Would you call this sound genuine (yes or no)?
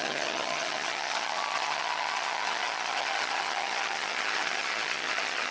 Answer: no